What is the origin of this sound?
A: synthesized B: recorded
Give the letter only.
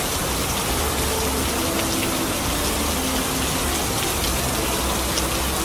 B